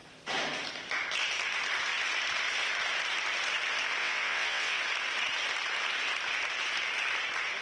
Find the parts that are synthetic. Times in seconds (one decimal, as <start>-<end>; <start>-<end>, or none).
4.0-4.8